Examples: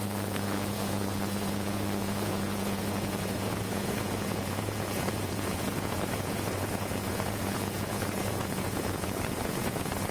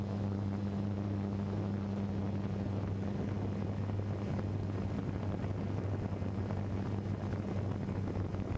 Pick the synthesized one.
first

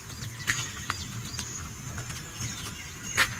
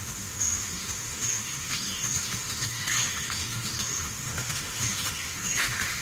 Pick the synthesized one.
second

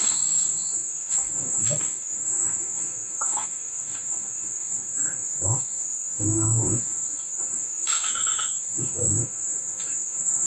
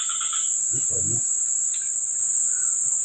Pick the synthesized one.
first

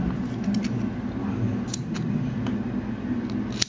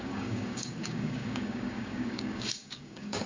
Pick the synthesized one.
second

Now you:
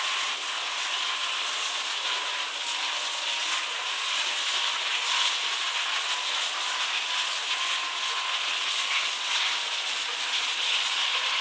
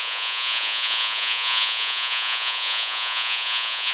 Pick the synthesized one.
second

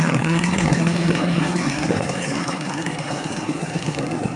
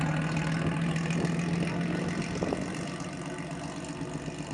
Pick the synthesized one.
first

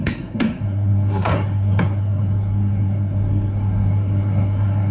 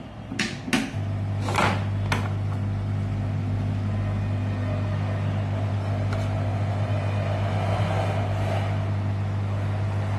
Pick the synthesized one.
first